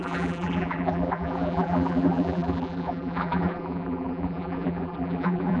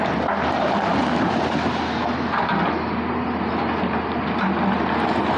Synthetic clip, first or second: first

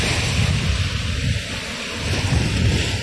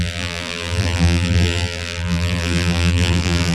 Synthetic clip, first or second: second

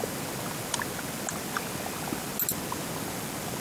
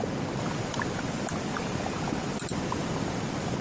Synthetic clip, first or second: second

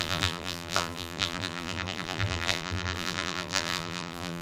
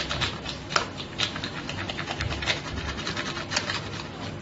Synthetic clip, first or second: first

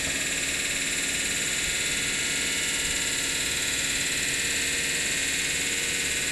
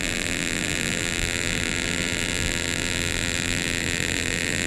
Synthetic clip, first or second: second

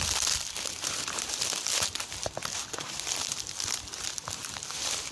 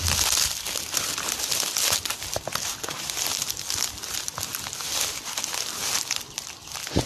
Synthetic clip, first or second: first